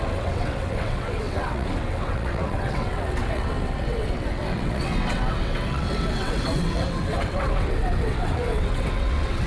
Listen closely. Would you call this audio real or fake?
fake